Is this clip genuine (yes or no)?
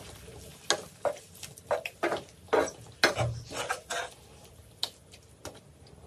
yes